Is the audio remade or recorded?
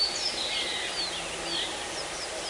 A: recorded